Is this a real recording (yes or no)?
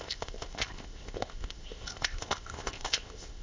no